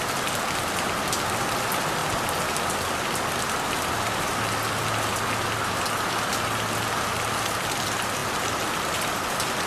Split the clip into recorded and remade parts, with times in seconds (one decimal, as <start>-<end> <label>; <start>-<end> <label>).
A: 0.0-9.7 recorded